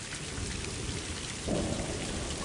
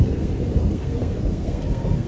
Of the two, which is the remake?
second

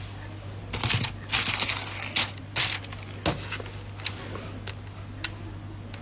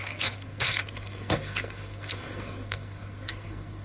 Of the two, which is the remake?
second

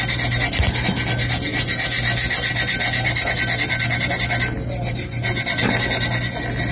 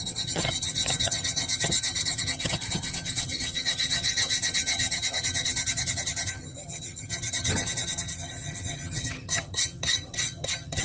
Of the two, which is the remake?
second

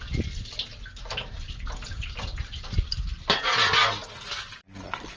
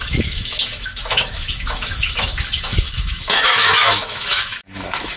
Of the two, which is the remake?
second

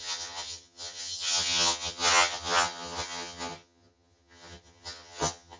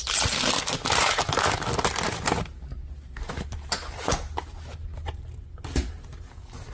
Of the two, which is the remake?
first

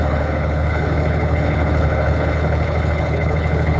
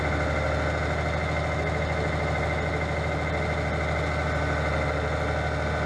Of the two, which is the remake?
first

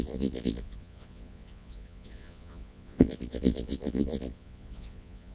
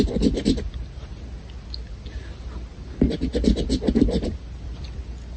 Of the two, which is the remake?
first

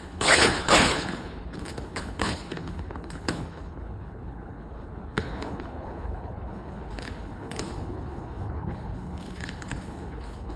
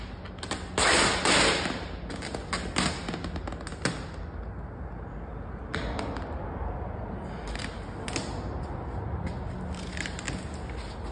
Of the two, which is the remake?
first